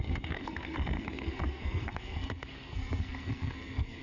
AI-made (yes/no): yes